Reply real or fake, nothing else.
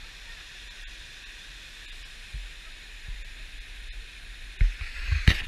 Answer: real